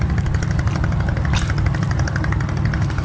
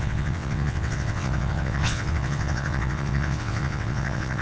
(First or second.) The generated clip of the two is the second